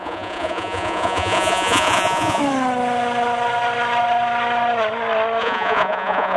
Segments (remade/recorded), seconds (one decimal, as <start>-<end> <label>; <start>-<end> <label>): 0.0-2.4 remade; 2.4-5.4 recorded; 5.4-6.4 remade